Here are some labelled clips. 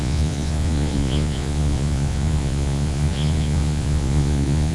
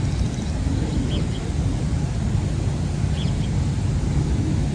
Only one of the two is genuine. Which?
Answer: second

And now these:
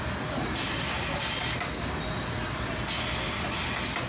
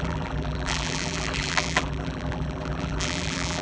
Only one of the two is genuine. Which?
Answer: first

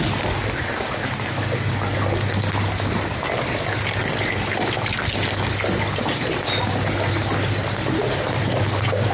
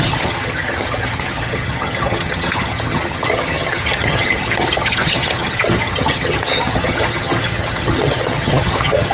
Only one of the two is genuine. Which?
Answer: first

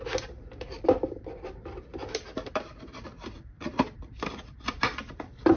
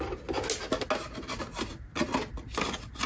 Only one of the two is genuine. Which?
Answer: second